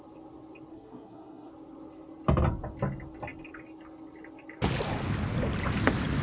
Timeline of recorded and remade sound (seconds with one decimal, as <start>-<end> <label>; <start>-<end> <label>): 0.0-0.7 recorded; 0.7-1.5 remade; 1.5-6.2 recorded